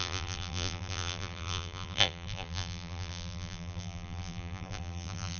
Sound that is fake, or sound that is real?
fake